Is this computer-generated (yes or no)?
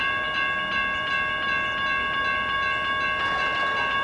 no